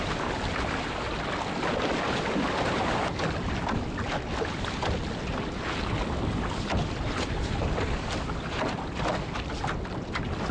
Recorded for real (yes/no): yes